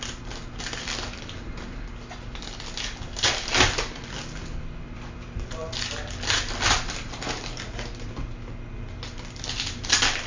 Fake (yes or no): no